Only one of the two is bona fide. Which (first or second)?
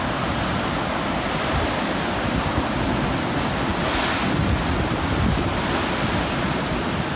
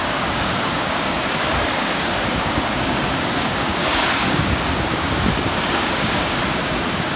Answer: first